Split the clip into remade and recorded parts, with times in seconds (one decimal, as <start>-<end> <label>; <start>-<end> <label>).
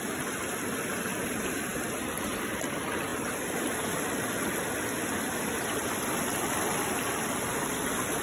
0.0-8.2 recorded